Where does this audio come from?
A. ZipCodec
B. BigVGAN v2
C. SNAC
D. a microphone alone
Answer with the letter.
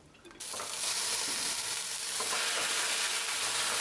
D